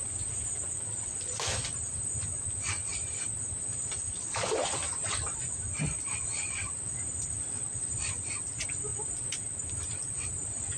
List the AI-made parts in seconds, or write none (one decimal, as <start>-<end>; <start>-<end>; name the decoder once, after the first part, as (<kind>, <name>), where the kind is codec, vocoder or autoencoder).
none